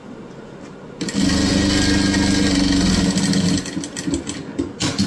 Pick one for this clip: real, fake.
real